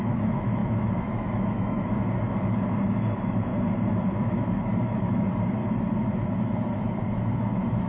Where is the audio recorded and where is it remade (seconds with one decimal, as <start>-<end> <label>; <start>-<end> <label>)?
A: 0.0-3.5 remade; 3.5-4.1 recorded; 4.1-5.6 remade; 5.6-7.4 recorded; 7.4-7.9 remade